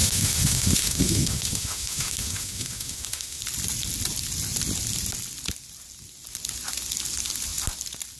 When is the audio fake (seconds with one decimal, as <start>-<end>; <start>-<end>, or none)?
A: 0.0-3.4

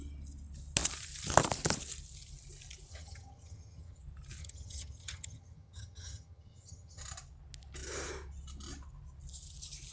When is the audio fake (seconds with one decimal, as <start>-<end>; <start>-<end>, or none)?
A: 2.9-4.0; 4.4-7.0

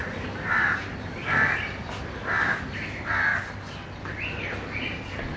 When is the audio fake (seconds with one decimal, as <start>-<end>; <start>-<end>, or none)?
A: 0.0-2.0; 3.3-4.0

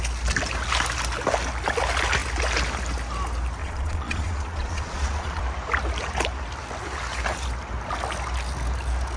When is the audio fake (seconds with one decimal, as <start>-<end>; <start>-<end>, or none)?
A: 3.6-5.4